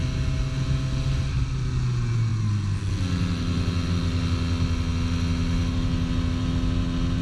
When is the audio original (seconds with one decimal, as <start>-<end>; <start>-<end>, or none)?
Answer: 0.0-7.2